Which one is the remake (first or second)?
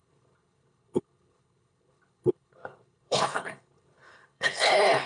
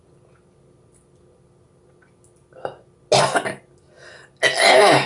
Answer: first